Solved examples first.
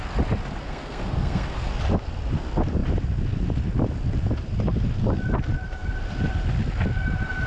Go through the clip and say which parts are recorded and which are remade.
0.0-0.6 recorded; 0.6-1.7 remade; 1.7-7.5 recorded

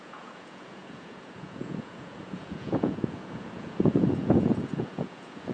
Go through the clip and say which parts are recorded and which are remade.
0.0-5.5 remade

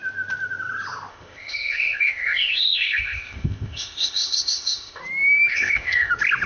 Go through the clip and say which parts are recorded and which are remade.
0.0-1.1 recorded; 1.1-5.0 remade; 5.0-5.5 recorded; 5.5-6.1 remade; 6.1-6.5 recorded